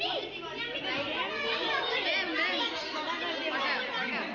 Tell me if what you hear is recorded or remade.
recorded